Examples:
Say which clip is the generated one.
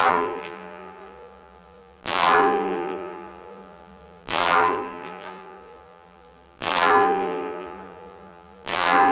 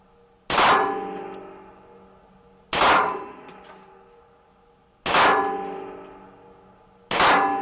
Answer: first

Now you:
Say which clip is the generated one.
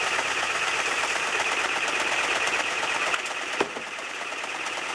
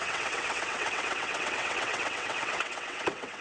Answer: second